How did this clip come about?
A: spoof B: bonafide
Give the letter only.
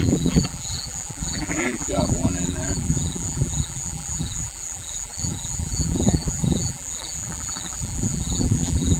A